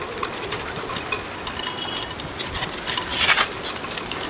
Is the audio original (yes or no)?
yes